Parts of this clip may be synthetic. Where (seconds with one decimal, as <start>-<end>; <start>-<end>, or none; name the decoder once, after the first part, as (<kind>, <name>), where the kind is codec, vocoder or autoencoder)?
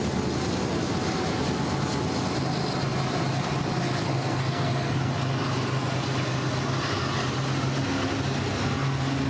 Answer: 4.1-5.1 (codec, SNAC)